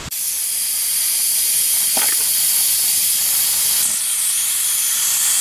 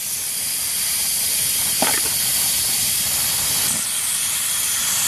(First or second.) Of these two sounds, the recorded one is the first